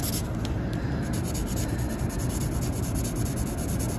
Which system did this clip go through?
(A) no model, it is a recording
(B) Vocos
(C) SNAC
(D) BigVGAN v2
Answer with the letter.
A